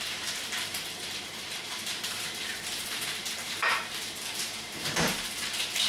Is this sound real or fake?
fake